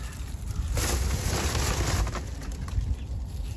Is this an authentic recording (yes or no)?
yes